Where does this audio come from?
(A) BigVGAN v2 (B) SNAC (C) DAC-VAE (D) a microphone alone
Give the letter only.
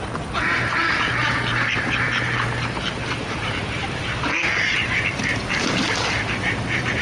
A